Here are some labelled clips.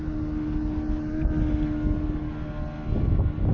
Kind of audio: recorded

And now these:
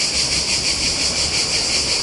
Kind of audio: remade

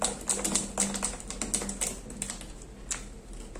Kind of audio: recorded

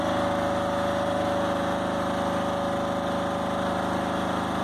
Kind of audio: recorded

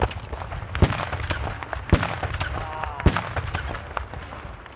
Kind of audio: recorded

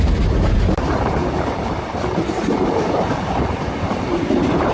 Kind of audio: remade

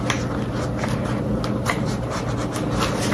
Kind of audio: recorded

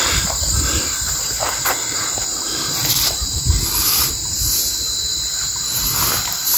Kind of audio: remade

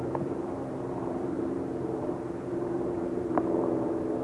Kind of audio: remade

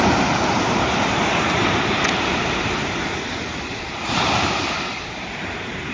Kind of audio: remade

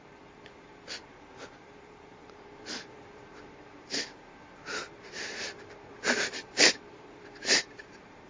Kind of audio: remade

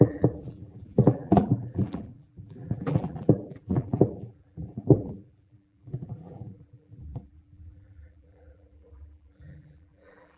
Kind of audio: remade